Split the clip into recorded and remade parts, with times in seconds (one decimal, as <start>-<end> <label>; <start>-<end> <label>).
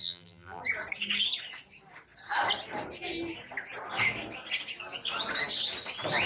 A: 0.0-0.6 remade; 0.6-6.3 recorded